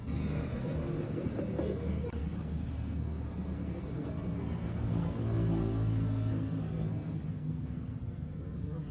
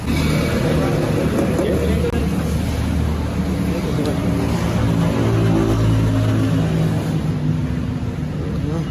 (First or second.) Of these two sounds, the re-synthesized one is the first